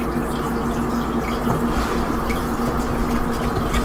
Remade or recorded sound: recorded